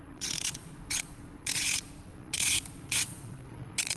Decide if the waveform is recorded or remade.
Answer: remade